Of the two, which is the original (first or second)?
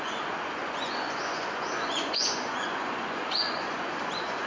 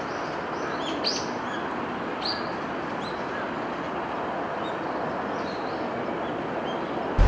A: second